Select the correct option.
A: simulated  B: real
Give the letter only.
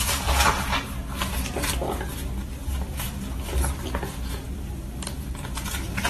B